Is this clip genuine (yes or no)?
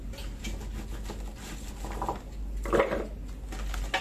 yes